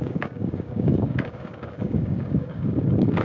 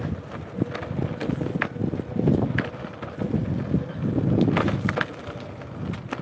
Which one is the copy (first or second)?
first